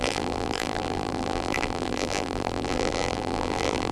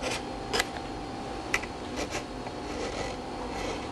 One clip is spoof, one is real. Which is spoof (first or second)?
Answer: first